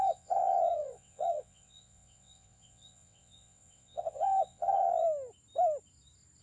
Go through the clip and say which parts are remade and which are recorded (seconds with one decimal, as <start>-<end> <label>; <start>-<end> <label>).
0.0-4.9 remade; 4.9-6.4 recorded